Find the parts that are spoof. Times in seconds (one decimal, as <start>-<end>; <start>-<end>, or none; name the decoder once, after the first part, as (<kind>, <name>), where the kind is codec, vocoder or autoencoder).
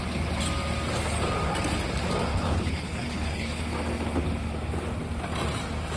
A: 2.3-3.6 (codec, HILCodec)